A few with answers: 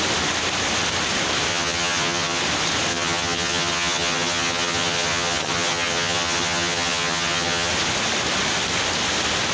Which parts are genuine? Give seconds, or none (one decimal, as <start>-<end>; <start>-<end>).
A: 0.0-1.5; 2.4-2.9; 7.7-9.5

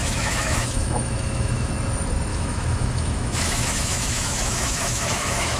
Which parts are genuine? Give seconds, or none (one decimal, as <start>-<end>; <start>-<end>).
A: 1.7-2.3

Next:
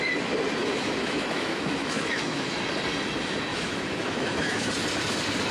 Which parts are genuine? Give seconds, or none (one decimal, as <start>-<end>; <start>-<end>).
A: 0.0-0.6; 2.5-3.5; 4.7-5.5

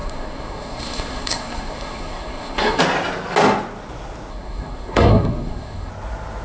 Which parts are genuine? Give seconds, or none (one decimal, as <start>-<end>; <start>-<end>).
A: 2.8-4.3; 5.9-6.4

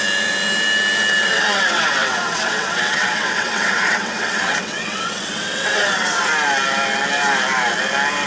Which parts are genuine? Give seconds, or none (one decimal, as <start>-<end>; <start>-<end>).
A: 0.0-1.2; 6.2-8.3